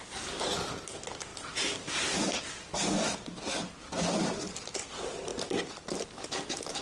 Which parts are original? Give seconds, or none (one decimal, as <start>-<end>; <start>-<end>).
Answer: 0.0-6.8